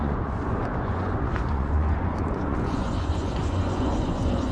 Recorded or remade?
remade